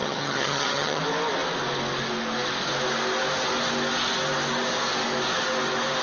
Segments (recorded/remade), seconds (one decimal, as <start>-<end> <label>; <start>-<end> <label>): 0.0-1.0 remade; 1.0-6.0 recorded